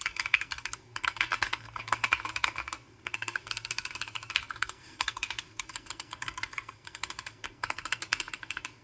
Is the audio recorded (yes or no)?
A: no